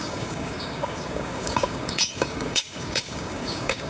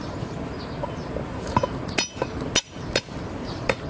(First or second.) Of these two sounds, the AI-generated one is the first